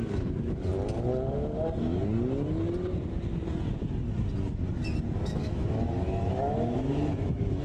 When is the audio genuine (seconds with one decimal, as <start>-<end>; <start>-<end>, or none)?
0.7-5.2